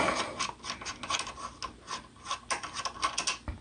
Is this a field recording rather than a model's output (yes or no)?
yes